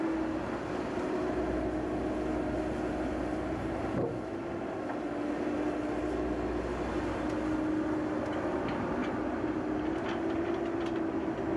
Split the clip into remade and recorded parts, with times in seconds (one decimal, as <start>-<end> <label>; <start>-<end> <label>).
0.0-11.6 recorded